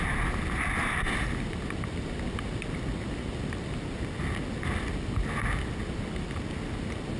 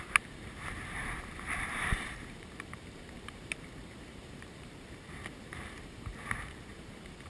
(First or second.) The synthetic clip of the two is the second